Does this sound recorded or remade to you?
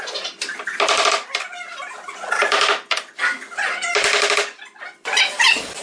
recorded